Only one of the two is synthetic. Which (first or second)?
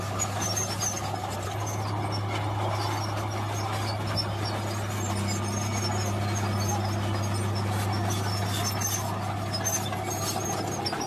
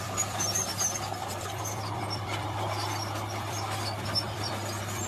second